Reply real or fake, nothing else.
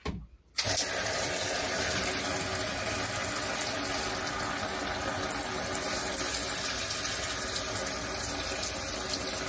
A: real